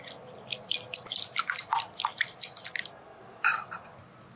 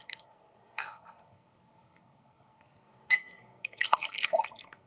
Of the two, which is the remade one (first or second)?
second